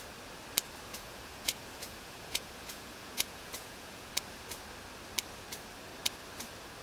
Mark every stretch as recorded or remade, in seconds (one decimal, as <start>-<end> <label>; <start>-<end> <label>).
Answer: 0.0-0.9 recorded; 0.9-4.1 remade; 4.1-6.8 recorded